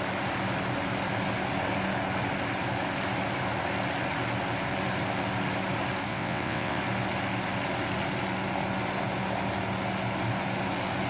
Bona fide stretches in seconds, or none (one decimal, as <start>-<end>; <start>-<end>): 0.0-6.1; 6.8-11.1